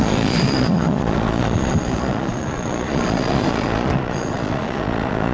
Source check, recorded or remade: remade